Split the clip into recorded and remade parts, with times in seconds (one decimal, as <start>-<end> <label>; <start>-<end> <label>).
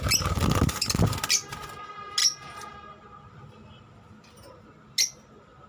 0.0-2.2 recorded; 2.2-2.7 remade; 2.7-5.7 recorded